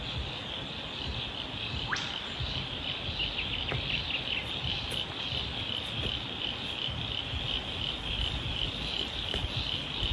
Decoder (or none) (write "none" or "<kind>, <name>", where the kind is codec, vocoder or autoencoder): none